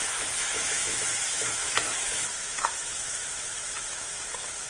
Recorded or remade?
remade